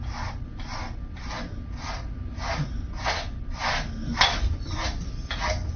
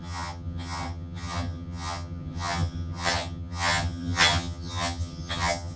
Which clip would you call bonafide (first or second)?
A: first